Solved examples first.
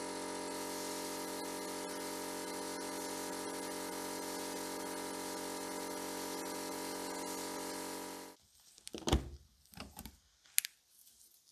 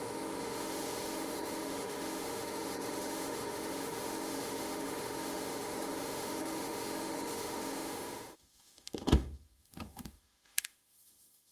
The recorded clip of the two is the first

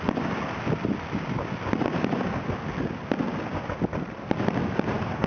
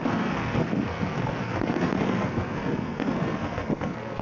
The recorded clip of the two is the first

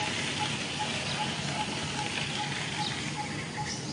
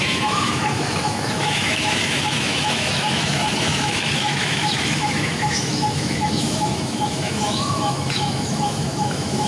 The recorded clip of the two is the first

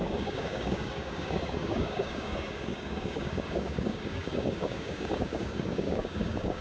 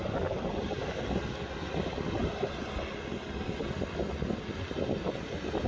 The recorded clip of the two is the second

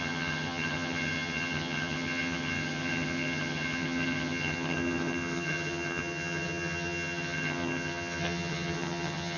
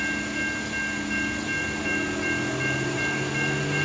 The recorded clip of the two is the second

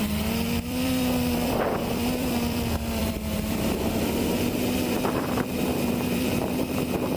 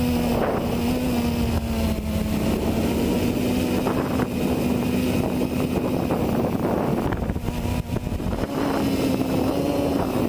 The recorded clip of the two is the second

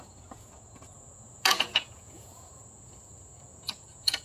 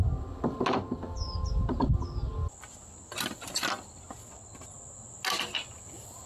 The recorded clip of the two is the second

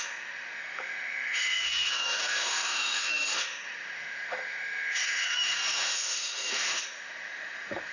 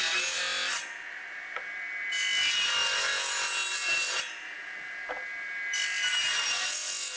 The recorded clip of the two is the second